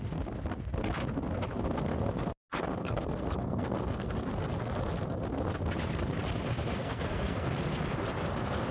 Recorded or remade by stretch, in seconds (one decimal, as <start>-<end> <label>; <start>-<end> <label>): 0.0-2.8 recorded; 2.8-4.1 remade; 4.1-6.8 recorded; 6.8-7.5 remade; 7.5-8.7 recorded

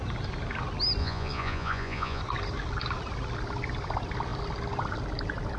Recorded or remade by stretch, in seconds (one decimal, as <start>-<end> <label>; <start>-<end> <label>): 0.0-1.0 recorded; 1.0-2.2 remade; 2.2-5.6 recorded

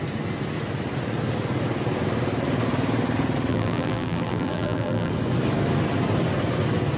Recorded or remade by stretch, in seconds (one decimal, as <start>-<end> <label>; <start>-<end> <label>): 0.0-3.5 recorded; 3.5-5.1 remade; 5.1-7.0 recorded

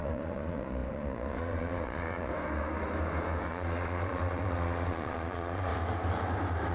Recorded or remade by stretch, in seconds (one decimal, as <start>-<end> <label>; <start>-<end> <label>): 0.0-2.3 remade; 2.3-3.5 recorded; 3.5-5.7 remade; 5.7-6.7 recorded

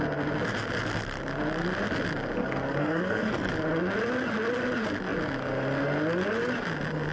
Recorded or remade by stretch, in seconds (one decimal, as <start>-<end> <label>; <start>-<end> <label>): 0.0-2.4 recorded; 2.4-3.5 remade; 3.5-7.1 recorded

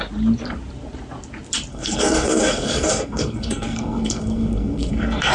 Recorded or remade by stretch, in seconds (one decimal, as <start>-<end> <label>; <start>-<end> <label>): 0.0-1.7 recorded; 1.7-5.3 remade